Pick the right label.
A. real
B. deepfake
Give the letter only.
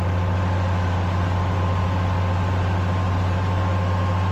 A